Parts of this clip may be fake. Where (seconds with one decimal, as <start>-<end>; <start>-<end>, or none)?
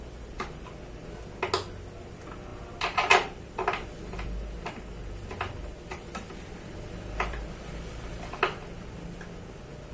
2.5-7.7